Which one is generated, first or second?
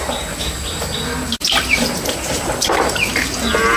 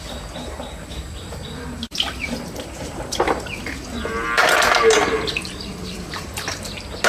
second